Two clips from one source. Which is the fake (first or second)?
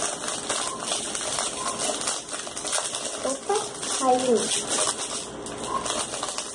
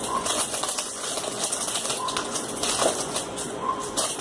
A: second